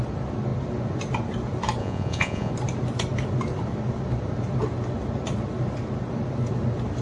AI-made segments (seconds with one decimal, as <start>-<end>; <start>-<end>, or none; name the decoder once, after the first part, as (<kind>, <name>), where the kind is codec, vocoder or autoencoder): 1.8-2.5 (vocoder, Vocos)